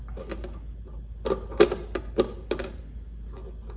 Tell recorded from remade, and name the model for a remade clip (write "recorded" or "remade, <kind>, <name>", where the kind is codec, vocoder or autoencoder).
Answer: recorded